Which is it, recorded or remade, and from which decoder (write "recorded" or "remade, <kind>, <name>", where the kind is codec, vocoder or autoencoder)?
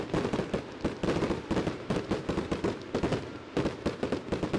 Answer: recorded